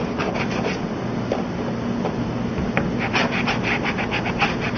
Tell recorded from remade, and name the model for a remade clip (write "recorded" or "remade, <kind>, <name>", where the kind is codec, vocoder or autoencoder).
recorded